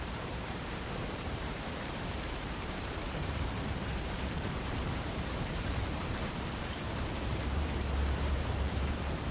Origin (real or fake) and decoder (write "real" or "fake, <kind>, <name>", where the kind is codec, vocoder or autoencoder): fake, vocoder, BigVGAN v2